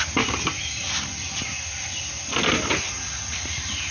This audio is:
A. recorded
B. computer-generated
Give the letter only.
A